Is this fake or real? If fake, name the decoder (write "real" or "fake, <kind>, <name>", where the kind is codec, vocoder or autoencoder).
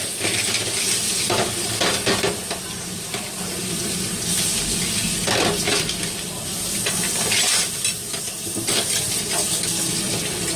real